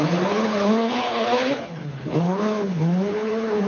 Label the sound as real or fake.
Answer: fake